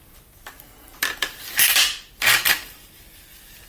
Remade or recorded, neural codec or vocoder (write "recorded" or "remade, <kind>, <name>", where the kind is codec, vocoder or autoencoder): remade, vocoder, BigVGAN v2